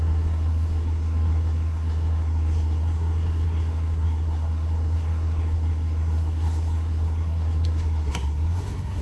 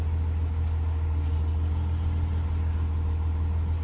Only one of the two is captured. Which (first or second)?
second